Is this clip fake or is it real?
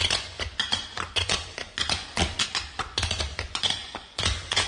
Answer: fake